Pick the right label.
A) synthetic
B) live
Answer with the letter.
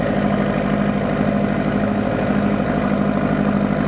B